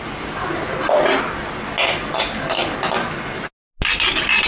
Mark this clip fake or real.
real